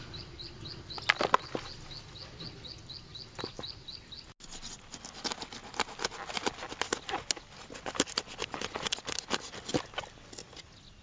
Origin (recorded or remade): recorded